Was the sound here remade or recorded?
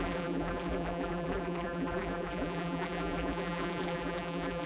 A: remade